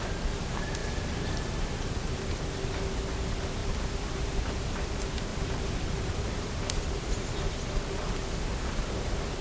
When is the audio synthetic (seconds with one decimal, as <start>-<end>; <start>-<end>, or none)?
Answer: 3.6-4.7; 5.3-7.5